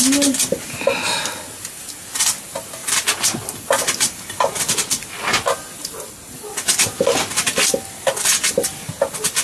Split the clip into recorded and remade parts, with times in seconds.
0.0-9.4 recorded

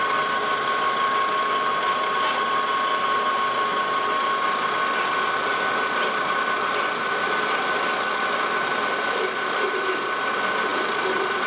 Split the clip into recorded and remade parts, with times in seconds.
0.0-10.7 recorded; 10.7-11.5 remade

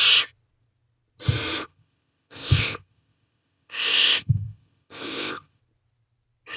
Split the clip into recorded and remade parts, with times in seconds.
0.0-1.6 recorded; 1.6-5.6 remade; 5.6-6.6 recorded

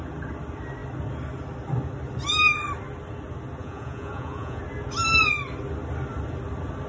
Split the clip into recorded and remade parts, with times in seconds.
0.0-3.6 recorded; 3.6-4.6 remade; 4.6-6.9 recorded

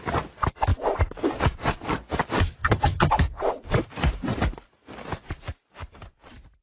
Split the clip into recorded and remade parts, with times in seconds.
0.0-2.6 recorded; 2.6-3.1 remade; 3.1-6.6 recorded